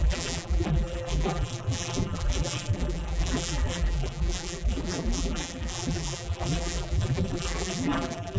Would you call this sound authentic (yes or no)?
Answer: no